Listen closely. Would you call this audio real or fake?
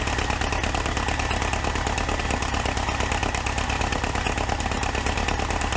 real